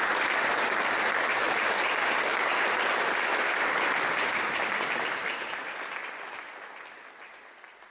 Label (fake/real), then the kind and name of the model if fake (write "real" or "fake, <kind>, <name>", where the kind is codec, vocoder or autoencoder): fake, vocoder, BigVGAN v2